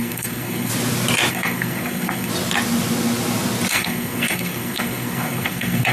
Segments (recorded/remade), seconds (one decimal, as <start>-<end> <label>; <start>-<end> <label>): 0.0-0.7 remade; 0.7-1.3 recorded; 1.3-2.3 remade; 2.3-3.7 recorded; 3.7-5.9 remade